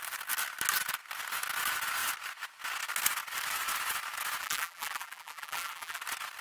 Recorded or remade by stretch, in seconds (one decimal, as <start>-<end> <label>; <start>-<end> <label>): 0.0-4.4 recorded; 4.4-6.0 remade; 6.0-6.4 recorded